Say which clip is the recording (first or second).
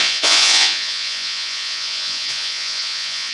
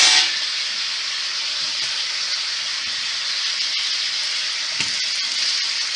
second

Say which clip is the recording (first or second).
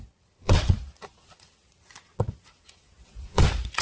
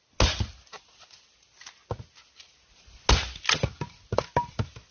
second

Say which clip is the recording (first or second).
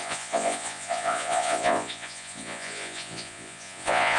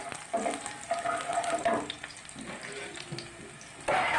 second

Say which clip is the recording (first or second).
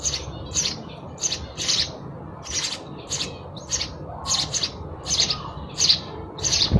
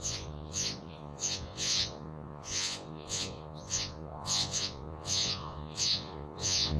first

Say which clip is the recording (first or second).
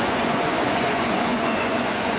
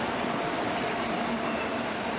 second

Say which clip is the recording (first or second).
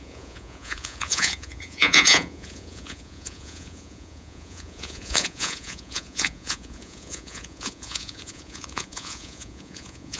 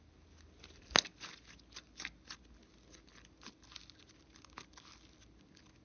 second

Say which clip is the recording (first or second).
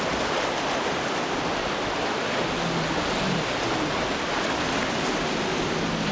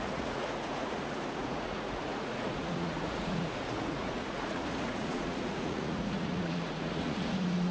first